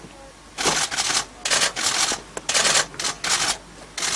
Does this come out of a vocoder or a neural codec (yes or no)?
no